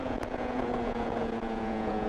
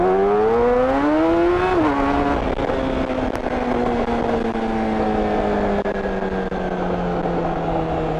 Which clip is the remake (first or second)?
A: first